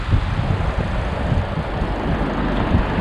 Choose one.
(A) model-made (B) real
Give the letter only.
B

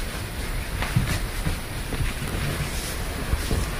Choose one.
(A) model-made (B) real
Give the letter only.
B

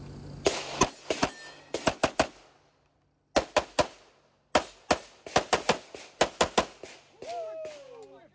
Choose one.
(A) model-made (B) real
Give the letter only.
B